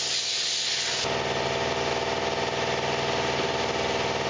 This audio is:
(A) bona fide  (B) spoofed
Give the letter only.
A